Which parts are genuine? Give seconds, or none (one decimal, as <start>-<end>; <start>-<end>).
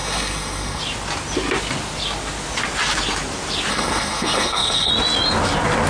0.8-3.7; 4.9-5.9